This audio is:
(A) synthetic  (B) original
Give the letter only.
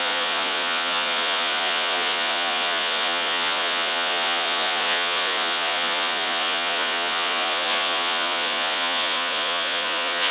A